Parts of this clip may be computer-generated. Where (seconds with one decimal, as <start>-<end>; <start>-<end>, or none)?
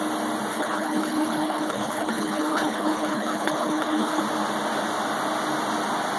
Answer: 0.5-4.2